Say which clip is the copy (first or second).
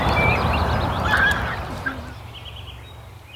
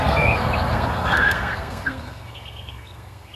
second